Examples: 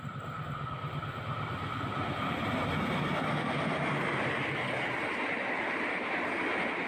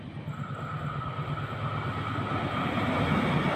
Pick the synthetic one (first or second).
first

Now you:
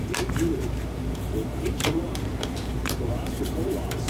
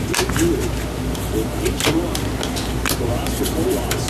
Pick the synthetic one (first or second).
first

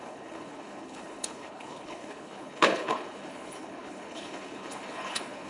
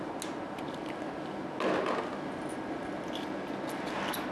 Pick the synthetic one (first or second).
first